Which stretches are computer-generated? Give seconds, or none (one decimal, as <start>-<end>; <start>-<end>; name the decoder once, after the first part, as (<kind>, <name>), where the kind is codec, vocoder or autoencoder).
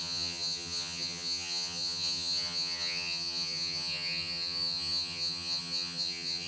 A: 0.0-6.5 (vocoder, HiFi-GAN)